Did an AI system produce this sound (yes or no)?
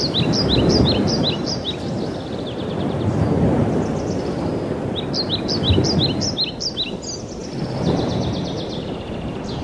no